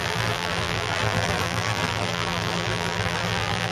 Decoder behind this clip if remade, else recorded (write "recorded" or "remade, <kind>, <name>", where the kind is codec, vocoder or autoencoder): remade, vocoder, BigVGAN v2